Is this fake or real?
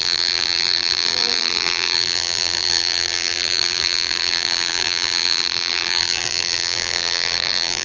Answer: fake